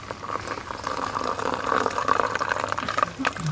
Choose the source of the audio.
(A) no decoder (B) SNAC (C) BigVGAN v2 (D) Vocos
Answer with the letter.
A